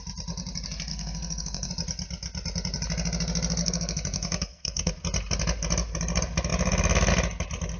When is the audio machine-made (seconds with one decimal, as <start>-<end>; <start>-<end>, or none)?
0.9-1.7; 3.6-4.9